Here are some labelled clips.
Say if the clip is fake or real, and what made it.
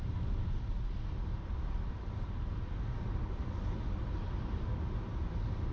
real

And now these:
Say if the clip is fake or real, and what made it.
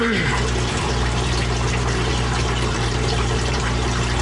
fake, vocoder, BigVGAN v2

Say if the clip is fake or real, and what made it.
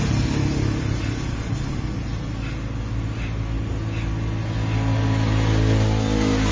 real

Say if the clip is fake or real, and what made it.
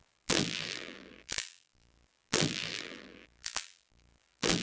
fake, vocoder, BigVGAN v2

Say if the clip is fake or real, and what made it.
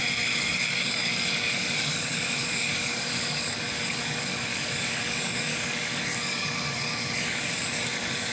fake, codec, DAC